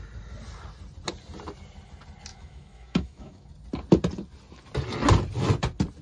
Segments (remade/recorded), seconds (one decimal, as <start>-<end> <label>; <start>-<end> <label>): 0.0-2.3 recorded; 2.3-3.5 remade; 3.5-6.0 recorded